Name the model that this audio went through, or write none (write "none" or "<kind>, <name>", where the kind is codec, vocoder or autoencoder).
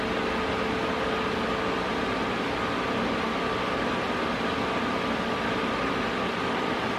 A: none